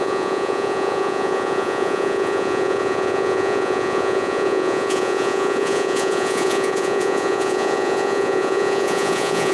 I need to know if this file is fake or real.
fake